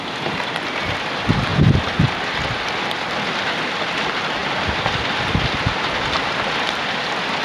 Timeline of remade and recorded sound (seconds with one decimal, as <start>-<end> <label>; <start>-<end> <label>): 0.0-1.5 recorded; 1.5-2.1 remade; 2.1-4.4 recorded; 4.4-5.5 remade; 5.5-7.4 recorded